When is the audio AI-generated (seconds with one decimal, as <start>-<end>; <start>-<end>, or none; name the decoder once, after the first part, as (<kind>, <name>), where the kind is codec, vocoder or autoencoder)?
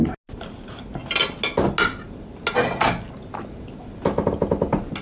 none